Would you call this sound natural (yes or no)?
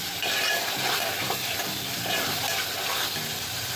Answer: yes